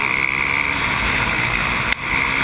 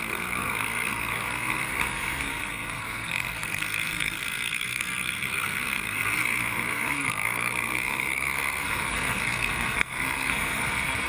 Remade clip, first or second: second